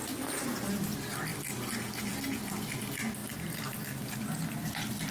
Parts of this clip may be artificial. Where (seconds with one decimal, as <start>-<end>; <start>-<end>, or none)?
3.2-5.1